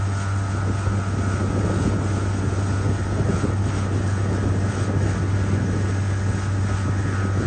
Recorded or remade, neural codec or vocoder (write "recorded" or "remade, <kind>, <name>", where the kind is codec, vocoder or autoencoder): recorded